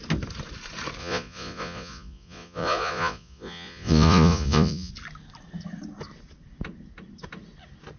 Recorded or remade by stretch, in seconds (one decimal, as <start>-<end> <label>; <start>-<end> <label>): 0.0-1.0 recorded; 1.0-4.9 remade; 4.9-8.0 recorded